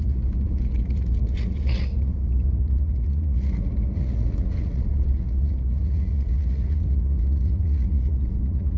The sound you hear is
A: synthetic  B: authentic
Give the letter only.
A